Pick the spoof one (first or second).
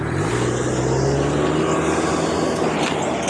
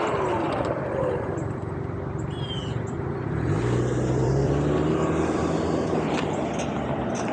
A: second